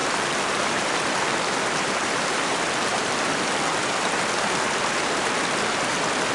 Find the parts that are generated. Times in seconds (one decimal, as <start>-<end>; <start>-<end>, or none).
0.0-3.8